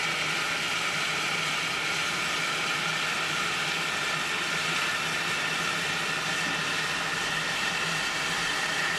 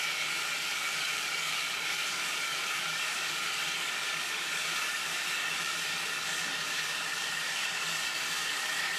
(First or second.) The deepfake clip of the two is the second